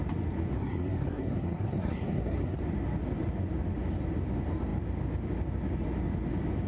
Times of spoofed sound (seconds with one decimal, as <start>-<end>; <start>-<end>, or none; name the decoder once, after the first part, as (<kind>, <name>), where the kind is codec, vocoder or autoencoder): 0.5-2.6 (codec, SNAC)